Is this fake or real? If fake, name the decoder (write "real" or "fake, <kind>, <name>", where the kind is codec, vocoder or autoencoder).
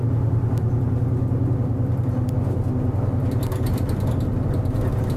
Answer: real